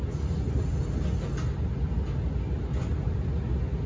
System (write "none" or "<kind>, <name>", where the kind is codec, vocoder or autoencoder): none